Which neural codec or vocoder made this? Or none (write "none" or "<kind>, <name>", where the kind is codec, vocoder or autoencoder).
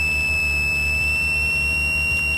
none